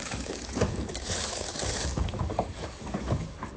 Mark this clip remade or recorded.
remade